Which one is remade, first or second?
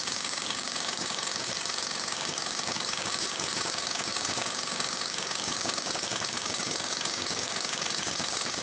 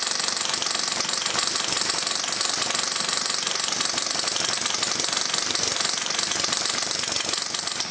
first